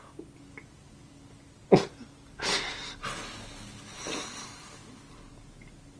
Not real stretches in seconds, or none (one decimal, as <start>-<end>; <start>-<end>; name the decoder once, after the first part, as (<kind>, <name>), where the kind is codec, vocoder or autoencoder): none